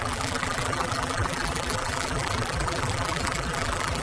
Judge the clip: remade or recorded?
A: remade